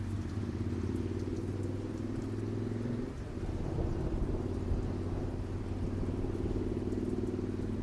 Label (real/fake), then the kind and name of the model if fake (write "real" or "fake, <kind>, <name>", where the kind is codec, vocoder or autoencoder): real